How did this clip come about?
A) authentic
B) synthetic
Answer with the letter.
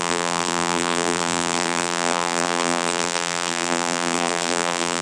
B